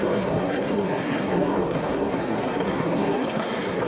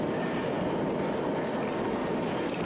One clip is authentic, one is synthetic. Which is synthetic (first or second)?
first